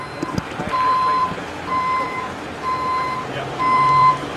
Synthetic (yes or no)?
yes